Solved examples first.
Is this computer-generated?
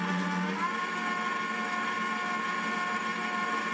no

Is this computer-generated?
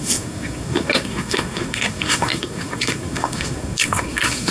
yes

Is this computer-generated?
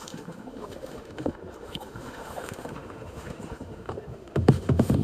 yes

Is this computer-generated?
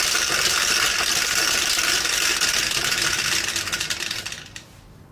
no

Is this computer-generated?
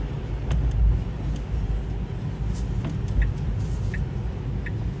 no